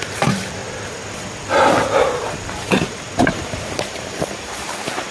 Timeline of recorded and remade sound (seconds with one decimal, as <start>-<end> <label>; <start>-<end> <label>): 0.0-0.6 remade; 0.6-3.7 recorded; 3.7-5.1 remade